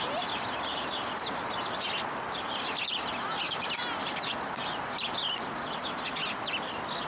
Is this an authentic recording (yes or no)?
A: yes